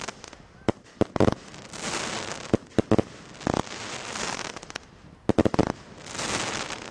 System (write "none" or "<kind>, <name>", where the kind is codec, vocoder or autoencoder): none